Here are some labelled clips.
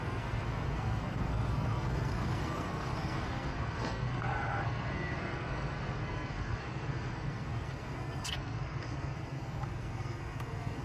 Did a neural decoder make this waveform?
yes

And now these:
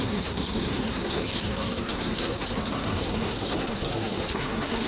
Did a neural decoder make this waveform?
yes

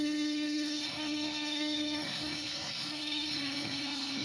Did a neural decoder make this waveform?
yes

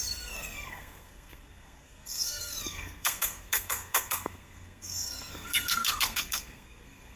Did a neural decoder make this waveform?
yes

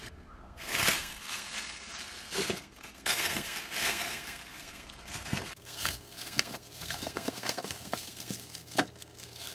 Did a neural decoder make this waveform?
yes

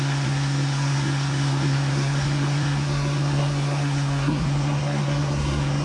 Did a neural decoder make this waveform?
yes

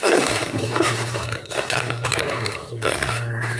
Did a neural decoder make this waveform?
yes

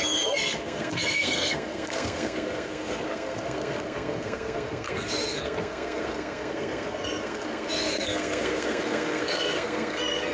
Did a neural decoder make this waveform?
yes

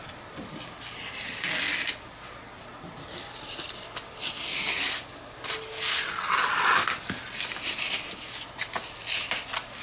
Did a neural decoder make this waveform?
no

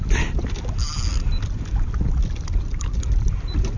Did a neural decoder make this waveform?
no